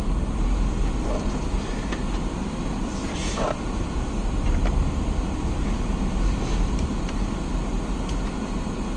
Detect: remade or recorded recorded